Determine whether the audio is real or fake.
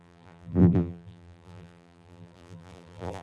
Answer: fake